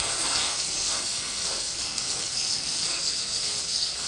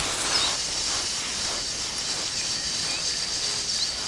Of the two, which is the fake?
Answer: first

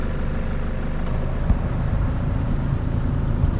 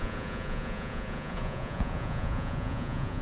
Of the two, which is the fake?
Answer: second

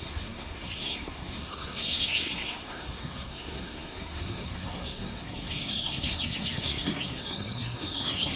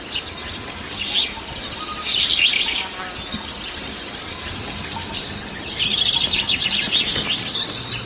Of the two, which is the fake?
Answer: first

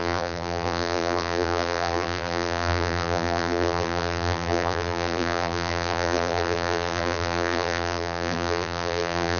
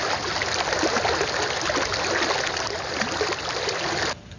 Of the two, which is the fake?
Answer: first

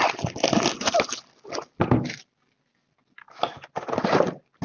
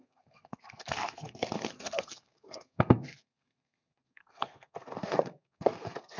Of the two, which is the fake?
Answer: second